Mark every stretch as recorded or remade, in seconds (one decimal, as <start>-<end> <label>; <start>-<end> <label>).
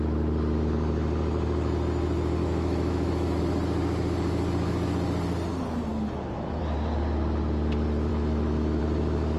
0.0-2.4 recorded; 2.4-3.4 remade; 3.4-5.9 recorded; 5.9-6.6 remade; 6.6-8.1 recorded; 8.1-8.8 remade; 8.8-9.4 recorded